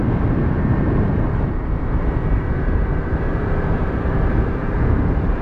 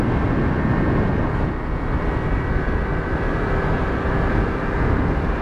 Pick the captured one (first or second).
second